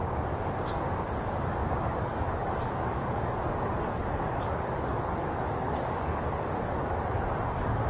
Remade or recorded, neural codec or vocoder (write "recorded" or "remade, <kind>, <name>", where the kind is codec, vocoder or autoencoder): remade, codec, DAC